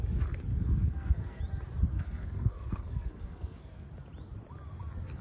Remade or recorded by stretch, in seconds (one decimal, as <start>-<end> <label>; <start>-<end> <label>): 0.0-0.5 recorded; 0.5-1.4 remade; 1.4-1.9 recorded; 1.9-3.9 remade; 3.9-5.2 recorded